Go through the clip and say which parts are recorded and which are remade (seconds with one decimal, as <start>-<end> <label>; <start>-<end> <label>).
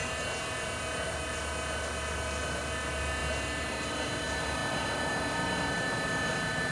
0.0-6.7 recorded